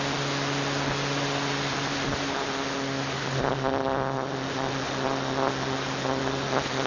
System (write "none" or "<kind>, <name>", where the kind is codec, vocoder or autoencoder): none